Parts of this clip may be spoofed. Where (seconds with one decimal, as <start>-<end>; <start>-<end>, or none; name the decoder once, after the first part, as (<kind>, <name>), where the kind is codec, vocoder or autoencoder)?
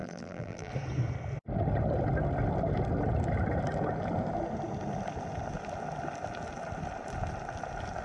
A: 0.0-0.7 (vocoder, BigVGAN v2)